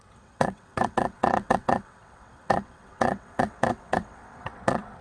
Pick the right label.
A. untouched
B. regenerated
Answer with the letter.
B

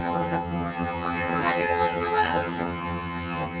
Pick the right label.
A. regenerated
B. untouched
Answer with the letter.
A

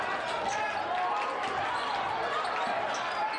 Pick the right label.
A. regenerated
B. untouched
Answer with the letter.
B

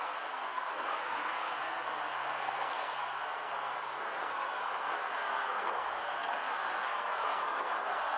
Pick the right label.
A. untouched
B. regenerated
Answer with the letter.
B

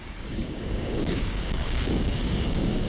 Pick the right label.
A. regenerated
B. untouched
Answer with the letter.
A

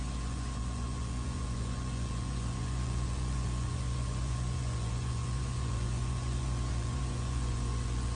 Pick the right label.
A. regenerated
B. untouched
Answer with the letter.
A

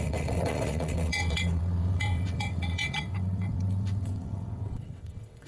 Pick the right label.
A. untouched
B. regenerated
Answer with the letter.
B